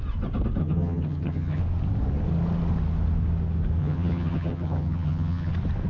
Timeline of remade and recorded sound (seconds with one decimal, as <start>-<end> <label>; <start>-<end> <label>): 0.0-0.6 recorded; 0.6-1.6 remade; 1.6-3.8 recorded; 3.8-5.5 remade; 5.5-5.9 recorded